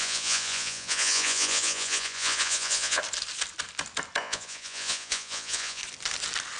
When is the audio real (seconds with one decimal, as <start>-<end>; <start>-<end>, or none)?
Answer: 3.0-4.2; 5.8-6.6